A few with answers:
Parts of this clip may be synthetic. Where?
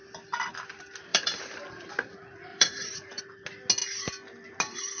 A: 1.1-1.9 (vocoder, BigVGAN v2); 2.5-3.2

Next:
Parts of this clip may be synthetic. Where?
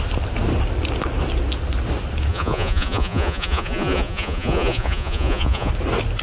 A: 2.3-5.7 (vocoder, Vocos)